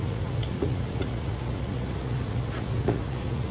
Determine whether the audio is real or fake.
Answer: fake